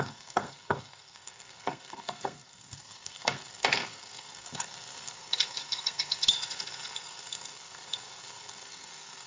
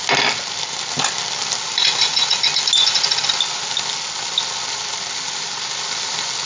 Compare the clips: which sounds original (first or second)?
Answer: second